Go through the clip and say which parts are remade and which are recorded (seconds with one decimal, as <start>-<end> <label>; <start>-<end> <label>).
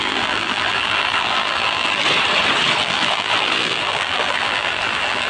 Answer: 0.0-2.0 remade; 2.0-2.8 recorded; 2.8-5.3 remade